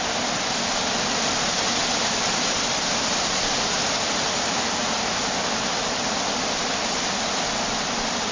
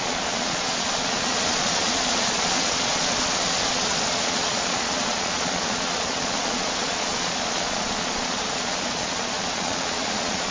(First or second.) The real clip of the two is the first